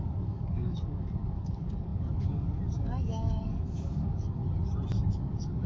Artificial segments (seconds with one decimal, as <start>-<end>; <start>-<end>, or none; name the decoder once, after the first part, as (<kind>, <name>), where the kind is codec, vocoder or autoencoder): 0.0-4.4 (codec, DAC); 5.1-5.7